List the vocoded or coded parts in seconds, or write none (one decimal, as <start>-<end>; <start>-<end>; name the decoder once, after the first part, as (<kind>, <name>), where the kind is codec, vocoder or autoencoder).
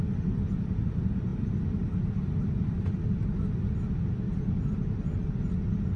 none